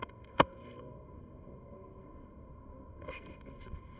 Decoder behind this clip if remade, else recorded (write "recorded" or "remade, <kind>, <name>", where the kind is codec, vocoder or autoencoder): remade, codec, SNAC